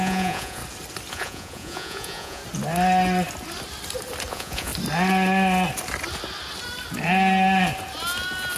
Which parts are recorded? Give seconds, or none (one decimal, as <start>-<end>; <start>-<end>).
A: 0.6-1.1; 2.4-4.3; 4.7-8.6